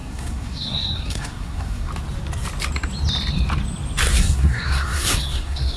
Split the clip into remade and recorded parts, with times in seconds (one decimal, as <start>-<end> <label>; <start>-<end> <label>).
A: 0.0-1.9 remade; 1.9-4.1 recorded; 4.1-5.8 remade